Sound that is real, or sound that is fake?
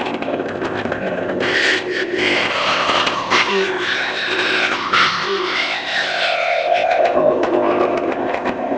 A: fake